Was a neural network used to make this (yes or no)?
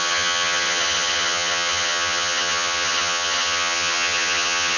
yes